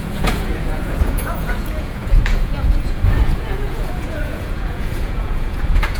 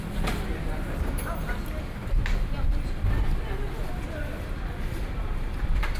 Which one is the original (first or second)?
second